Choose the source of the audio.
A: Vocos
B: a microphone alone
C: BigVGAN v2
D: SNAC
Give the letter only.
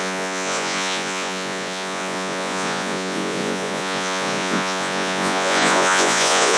A